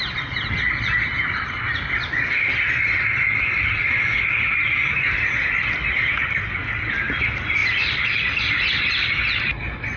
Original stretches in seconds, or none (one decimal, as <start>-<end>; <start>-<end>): 0.0-7.6; 8.8-10.0